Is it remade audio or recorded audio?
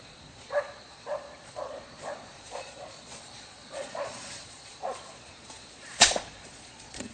remade